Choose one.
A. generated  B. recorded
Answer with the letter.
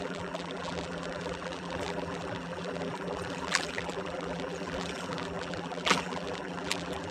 A